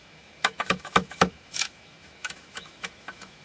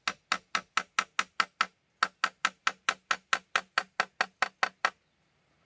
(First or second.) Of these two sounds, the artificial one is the first